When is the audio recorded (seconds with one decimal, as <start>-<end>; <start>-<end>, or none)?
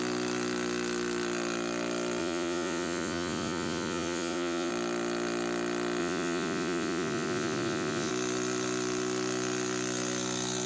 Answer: 0.0-2.2; 4.7-6.0; 8.1-10.7